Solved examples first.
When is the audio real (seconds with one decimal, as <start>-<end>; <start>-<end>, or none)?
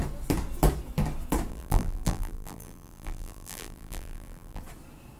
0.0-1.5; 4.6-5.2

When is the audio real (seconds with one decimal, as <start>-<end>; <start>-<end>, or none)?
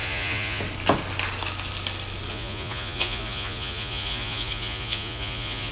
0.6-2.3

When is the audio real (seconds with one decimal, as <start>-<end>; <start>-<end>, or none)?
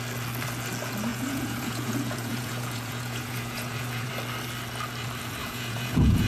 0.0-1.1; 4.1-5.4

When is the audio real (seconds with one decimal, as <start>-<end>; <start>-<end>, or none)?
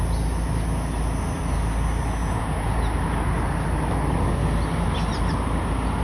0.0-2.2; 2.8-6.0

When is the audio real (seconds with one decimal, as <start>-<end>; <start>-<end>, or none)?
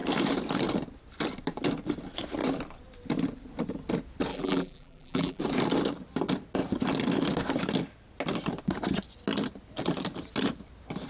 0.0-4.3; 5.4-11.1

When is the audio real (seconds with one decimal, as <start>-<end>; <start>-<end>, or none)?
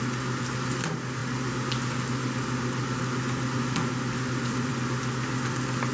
0.0-5.9